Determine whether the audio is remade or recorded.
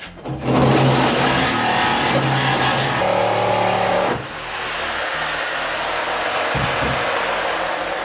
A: recorded